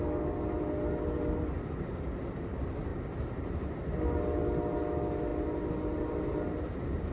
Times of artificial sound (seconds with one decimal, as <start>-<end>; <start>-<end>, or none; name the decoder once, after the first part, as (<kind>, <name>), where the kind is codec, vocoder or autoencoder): none